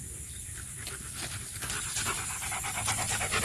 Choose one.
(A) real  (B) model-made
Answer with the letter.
A